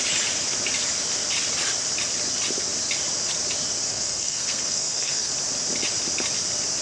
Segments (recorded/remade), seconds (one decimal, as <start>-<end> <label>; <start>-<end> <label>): 0.0-3.9 recorded; 3.9-5.3 remade; 5.3-6.8 recorded